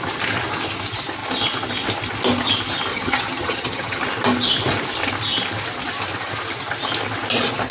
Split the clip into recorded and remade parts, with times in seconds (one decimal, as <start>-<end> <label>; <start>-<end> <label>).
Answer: 0.0-2.9 recorded; 2.9-4.0 remade; 4.0-7.7 recorded